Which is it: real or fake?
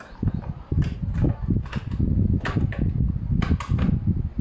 real